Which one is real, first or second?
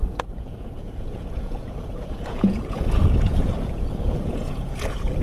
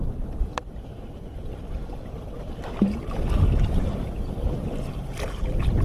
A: second